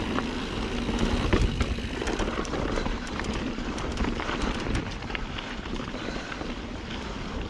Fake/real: fake